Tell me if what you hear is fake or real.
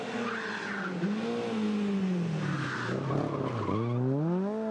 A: real